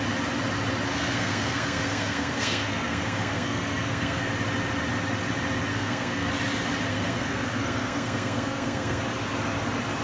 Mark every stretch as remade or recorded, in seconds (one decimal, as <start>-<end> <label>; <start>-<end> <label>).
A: 0.0-0.9 recorded; 0.9-4.3 remade; 4.3-5.7 recorded; 5.7-6.3 remade; 6.3-6.9 recorded; 6.9-9.0 remade; 9.0-10.0 recorded